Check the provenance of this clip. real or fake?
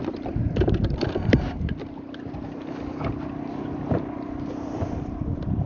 fake